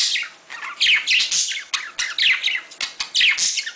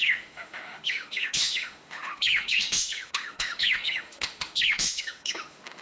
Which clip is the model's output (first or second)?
second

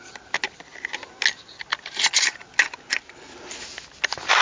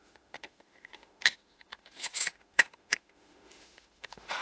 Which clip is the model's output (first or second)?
second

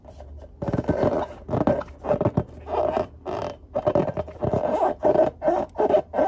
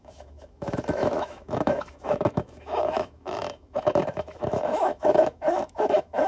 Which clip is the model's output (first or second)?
second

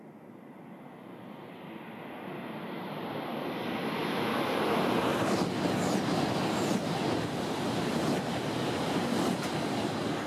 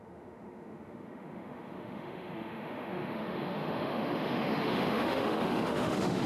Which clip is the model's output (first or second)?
second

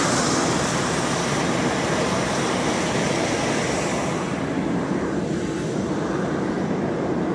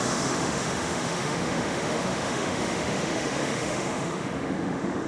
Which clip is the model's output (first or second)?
second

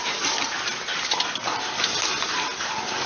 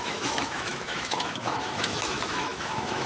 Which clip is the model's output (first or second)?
second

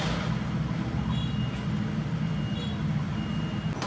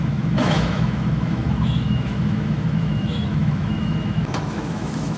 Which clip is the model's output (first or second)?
second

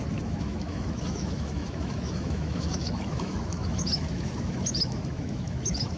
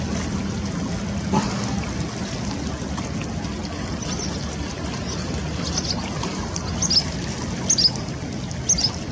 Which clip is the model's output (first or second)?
first